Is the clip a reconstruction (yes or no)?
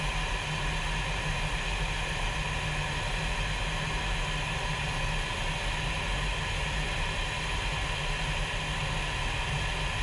no